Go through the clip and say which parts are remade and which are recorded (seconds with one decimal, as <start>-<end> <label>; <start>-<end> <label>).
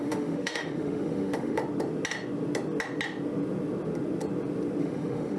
0.0-1.6 remade; 1.6-4.8 recorded; 4.8-5.4 remade